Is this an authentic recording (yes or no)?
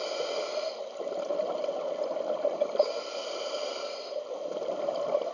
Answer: yes